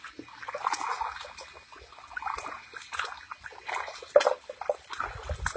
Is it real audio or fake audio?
real